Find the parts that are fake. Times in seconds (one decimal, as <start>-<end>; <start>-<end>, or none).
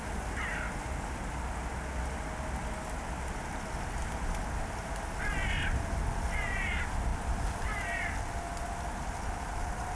none